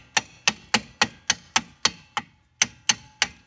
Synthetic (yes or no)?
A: no